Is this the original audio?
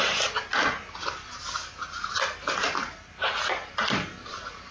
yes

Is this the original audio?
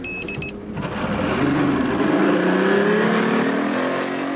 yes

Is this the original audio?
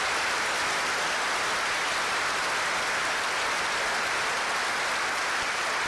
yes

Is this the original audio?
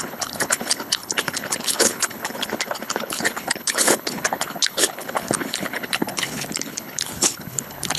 no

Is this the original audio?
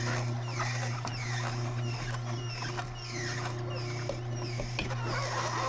yes